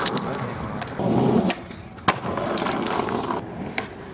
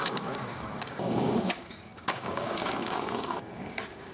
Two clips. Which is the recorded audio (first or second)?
first